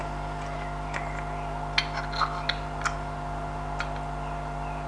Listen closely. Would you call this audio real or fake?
real